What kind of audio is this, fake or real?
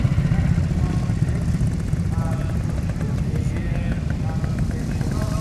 real